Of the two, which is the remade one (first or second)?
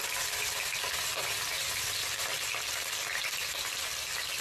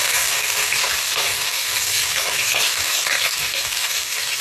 second